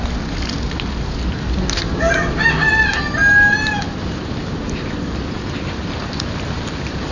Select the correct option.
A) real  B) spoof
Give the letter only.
A